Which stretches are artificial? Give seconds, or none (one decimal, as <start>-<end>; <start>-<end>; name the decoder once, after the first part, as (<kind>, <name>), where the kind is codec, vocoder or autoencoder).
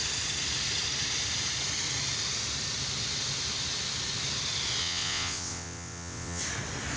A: 4.8-6.4 (vocoder, WaveNeXt)